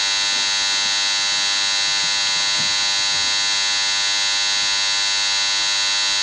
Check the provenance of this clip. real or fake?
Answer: real